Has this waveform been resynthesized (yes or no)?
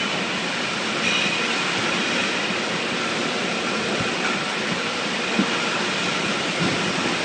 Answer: no